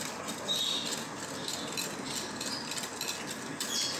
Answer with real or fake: real